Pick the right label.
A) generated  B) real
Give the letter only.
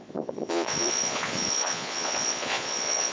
A